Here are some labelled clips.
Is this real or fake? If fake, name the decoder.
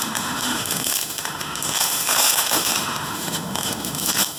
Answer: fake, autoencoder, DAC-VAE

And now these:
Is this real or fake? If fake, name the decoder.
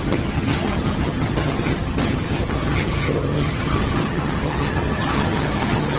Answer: fake, vocoder, HiFi-GAN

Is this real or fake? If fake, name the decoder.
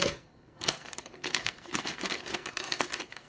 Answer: fake, codec, SNAC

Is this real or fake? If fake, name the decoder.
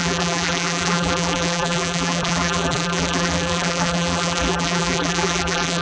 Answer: fake, vocoder, BigVGAN v2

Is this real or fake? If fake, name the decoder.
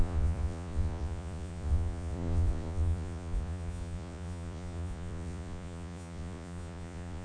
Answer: fake, vocoder, Vocos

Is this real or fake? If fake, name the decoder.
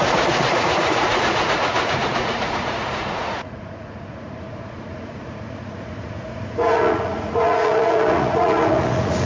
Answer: fake, vocoder, Vocos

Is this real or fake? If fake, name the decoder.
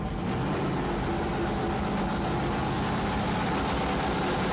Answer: real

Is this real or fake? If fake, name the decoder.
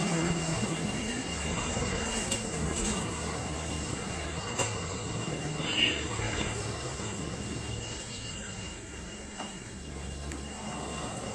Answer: fake, codec, SNAC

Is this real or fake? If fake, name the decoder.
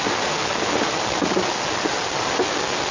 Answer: real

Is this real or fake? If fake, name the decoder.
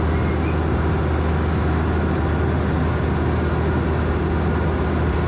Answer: real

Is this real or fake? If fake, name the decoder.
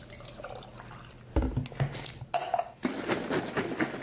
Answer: real